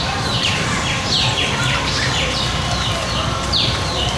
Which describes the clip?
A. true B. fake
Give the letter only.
B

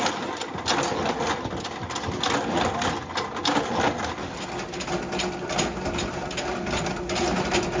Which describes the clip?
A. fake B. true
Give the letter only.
B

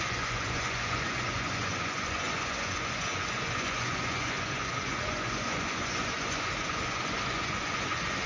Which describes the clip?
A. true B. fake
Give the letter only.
B